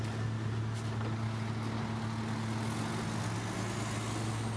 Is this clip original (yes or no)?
yes